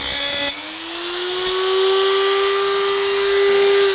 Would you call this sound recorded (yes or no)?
yes